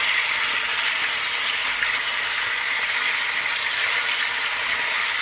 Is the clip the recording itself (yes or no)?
yes